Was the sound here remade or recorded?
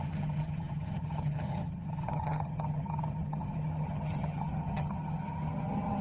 remade